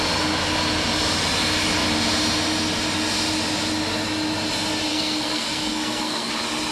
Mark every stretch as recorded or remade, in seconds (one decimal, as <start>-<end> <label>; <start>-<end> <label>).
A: 0.0-4.9 recorded; 4.9-6.3 remade; 6.3-6.7 recorded